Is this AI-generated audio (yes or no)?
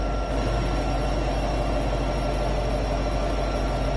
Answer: no